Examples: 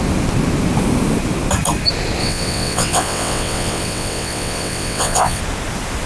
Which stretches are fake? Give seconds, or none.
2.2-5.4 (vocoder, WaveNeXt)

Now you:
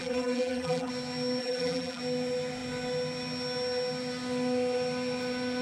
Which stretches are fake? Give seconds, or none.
0.0-0.9 (vocoder, BigVGAN v2); 1.4-2.0

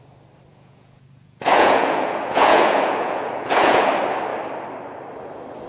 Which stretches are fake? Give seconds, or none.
0.5-3.9 (vocoder, Vocos)

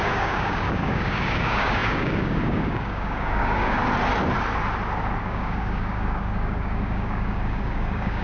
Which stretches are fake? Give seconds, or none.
0.0-3.8 (codec, DAC); 5.2-8.2